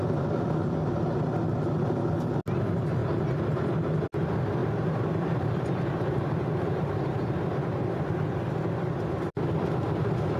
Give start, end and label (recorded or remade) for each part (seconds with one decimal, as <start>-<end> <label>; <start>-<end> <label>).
0.0-3.0 recorded; 3.0-3.6 remade; 3.6-4.6 recorded; 4.6-8.5 remade; 8.5-10.4 recorded